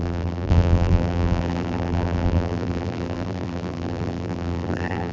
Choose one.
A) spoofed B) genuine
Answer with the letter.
A